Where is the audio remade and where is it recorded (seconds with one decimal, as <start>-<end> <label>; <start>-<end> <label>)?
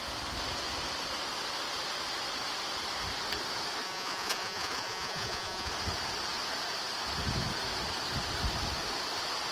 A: 0.0-3.8 recorded; 3.8-5.7 remade; 5.7-9.5 recorded